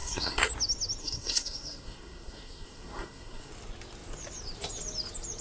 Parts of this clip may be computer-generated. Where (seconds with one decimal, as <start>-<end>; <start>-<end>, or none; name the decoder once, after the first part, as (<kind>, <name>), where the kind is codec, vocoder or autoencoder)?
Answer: 0.0-0.5 (codec, SNAC); 1.0-3.5